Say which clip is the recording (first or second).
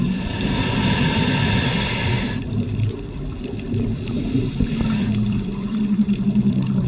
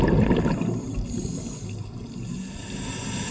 second